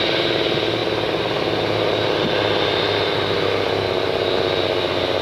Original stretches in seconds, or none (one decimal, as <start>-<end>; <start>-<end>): 0.0-5.2